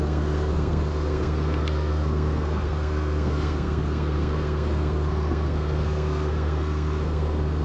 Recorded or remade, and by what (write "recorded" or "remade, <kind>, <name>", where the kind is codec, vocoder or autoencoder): remade, codec, SNAC